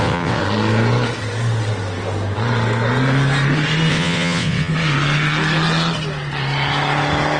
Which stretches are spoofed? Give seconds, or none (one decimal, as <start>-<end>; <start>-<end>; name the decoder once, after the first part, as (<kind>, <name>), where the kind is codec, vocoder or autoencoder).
0.0-0.4 (vocoder, WaveNeXt); 3.9-4.7